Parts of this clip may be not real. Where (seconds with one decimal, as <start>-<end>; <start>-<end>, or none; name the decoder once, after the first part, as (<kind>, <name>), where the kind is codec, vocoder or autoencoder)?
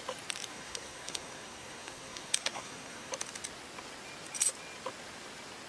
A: 0.5-3.1 (codec, SNAC)